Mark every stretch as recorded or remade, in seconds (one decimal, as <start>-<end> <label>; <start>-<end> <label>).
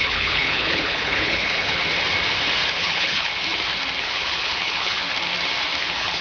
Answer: 0.0-1.8 remade; 1.8-2.8 recorded; 2.8-3.3 remade; 3.3-4.0 recorded; 4.0-5.0 remade; 5.0-5.8 recorded; 5.8-6.2 remade